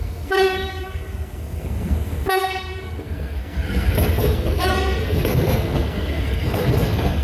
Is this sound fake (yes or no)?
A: yes